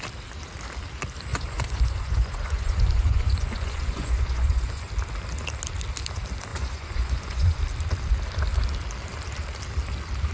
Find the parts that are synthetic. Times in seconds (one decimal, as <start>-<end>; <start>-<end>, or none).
1.3-4.9; 6.5-7.6